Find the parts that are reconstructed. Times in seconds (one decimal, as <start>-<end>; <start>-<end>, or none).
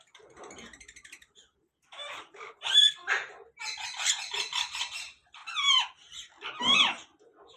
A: 0.0-3.0; 4.2-5.4; 6.6-7.6